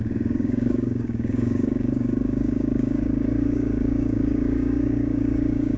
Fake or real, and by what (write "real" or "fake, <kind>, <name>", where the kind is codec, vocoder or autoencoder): fake, codec, DAC